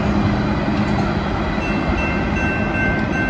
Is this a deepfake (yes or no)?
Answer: no